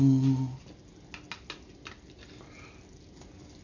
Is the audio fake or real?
real